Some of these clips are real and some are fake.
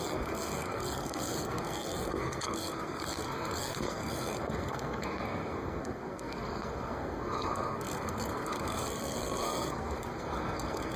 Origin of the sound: fake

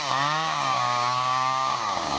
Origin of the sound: fake